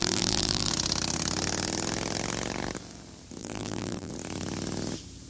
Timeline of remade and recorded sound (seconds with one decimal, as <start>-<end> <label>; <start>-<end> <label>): 0.0-0.7 remade; 0.7-3.4 recorded; 3.4-4.1 remade; 4.1-5.3 recorded